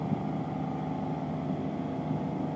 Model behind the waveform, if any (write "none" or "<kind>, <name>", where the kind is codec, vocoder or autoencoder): none